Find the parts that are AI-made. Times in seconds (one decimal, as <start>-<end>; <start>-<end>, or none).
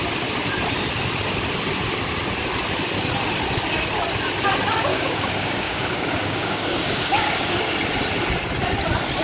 4.9-7.6